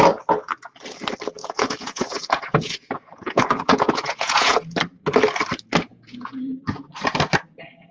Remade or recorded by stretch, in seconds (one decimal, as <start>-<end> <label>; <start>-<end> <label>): 0.0-1.4 recorded; 1.4-4.8 remade; 4.8-5.9 recorded; 5.9-6.6 remade; 6.6-7.9 recorded